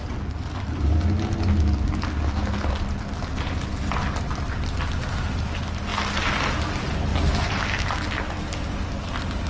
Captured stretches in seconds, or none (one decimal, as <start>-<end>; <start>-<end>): 0.0-9.5